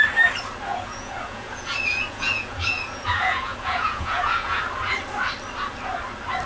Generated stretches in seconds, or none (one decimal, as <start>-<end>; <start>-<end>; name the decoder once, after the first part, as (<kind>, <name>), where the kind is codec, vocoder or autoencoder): 0.7-4.6 (vocoder, Vocos)